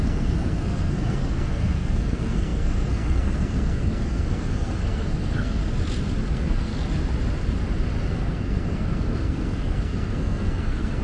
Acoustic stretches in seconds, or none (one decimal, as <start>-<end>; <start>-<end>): 5.6-6.3; 6.7-8.1